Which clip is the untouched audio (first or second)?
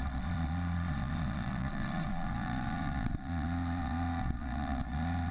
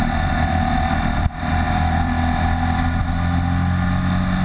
second